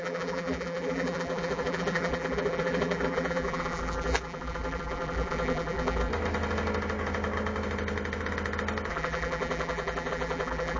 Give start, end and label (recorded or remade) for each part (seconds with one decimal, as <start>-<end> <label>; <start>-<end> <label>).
0.0-6.1 remade; 6.1-8.9 recorded; 8.9-10.8 remade